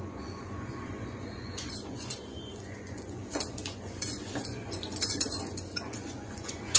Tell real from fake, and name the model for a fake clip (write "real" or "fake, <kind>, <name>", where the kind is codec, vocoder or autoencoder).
fake, vocoder, Vocos